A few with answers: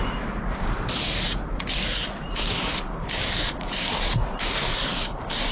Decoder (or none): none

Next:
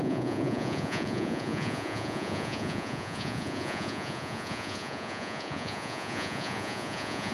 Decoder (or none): vocoder, Vocos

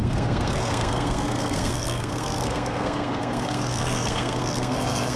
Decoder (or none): codec, SNAC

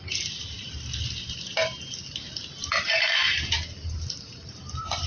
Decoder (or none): vocoder, BigVGAN v2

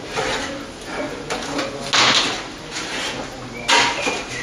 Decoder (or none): none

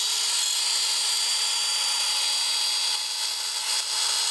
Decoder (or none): none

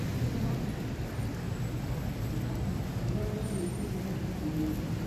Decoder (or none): none